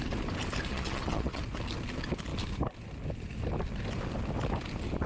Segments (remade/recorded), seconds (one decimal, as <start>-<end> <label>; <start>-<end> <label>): 0.0-0.7 recorded; 0.7-1.4 remade; 1.4-5.1 recorded